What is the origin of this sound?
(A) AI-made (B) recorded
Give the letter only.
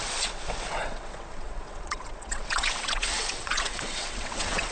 A